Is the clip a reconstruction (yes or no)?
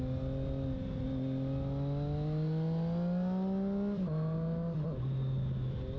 no